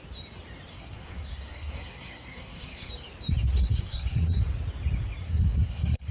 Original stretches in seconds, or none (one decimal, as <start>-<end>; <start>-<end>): 0.0-0.7; 2.9-3.5; 4.4-5.2